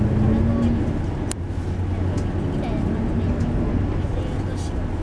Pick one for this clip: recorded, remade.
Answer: recorded